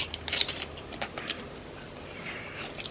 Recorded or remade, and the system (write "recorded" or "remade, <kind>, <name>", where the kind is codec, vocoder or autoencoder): recorded